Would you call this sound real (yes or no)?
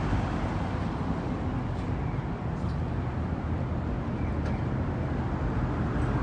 yes